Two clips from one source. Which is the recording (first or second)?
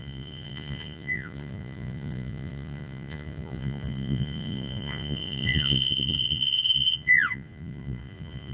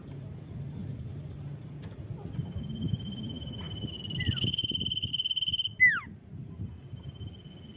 second